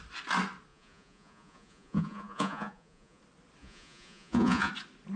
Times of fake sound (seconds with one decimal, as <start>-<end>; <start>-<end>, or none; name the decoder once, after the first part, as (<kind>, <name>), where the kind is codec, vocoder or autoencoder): 0.7-3.2 (vocoder, Vocos); 3.6-4.7